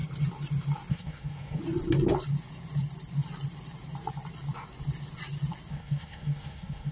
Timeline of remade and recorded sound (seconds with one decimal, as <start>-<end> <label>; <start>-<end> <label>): 0.0-0.9 recorded; 0.9-1.6 remade; 1.6-5.7 recorded; 5.7-6.9 remade